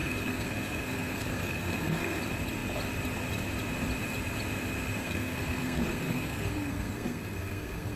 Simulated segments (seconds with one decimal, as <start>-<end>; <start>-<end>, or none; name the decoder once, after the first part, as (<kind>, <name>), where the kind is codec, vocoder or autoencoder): 0.0-2.2 (codec, SNAC); 5.0-8.0